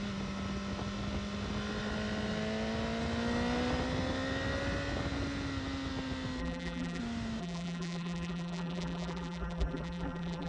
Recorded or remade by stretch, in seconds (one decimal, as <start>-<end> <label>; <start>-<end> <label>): 0.0-6.4 recorded; 6.4-7.0 remade; 7.0-7.4 recorded; 7.4-10.5 remade